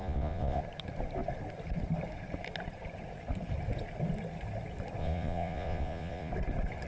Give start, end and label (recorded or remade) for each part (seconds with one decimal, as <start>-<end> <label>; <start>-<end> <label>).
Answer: 0.0-0.6 remade; 0.6-5.0 recorded; 5.0-6.3 remade; 6.3-6.9 recorded